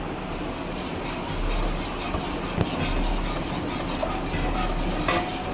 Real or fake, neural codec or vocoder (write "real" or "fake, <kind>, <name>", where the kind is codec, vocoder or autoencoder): real